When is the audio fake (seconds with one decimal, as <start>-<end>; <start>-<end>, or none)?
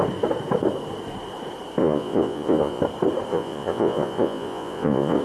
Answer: 1.8-2.8; 3.3-5.2